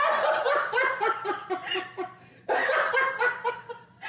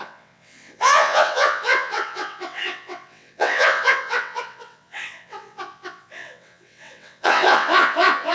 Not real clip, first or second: second